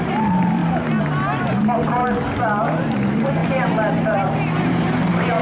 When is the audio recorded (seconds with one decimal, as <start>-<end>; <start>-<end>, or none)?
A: 0.6-1.4; 2.0-2.8